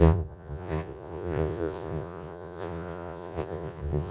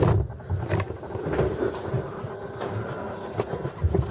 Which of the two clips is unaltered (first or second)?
second